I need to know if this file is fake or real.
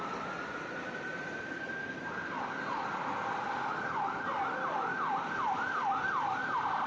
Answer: real